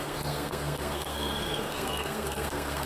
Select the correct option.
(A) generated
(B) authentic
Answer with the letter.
A